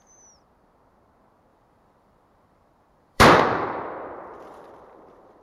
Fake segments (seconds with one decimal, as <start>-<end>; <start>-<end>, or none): 1.5-4.7